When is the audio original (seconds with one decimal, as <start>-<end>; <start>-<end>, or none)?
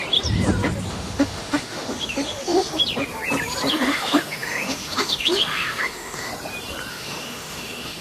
0.0-0.9; 2.8-3.7; 6.3-6.9